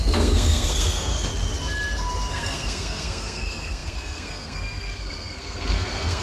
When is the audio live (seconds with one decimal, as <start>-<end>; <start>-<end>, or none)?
1.3-2.3